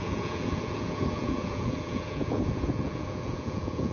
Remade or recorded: remade